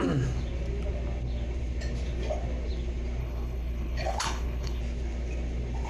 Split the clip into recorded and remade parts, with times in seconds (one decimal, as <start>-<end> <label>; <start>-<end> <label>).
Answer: 0.0-3.2 recorded; 3.2-4.8 remade; 4.8-5.9 recorded